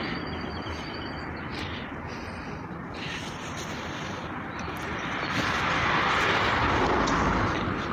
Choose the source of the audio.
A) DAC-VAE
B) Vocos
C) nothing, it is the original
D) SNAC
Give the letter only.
C